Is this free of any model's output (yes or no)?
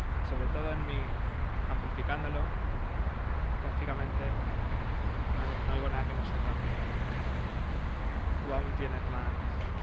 yes